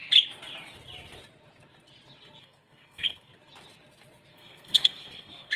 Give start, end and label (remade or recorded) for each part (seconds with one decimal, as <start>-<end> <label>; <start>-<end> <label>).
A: 0.0-2.4 recorded; 2.4-3.3 remade; 3.3-4.3 recorded; 4.3-5.6 remade